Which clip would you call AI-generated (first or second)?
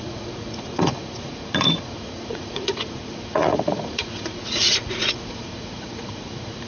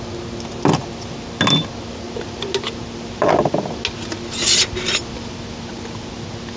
first